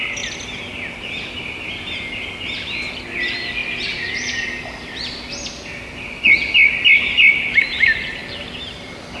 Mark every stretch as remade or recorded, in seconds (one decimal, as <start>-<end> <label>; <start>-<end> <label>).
0.0-9.2 recorded